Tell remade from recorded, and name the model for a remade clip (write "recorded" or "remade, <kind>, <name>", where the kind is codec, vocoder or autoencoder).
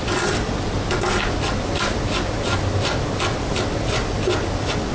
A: recorded